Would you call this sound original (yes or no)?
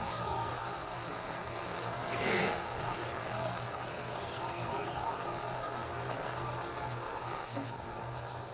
no